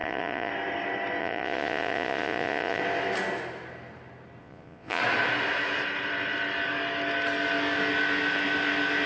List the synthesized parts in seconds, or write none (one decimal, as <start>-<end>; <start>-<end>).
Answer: 0.0-0.5; 1.2-2.8; 4.4-5.0